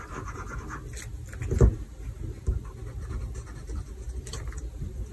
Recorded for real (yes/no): yes